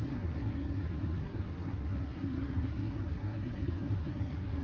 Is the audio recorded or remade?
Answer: remade